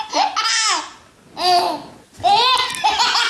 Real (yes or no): yes